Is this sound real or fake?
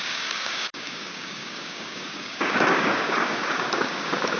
fake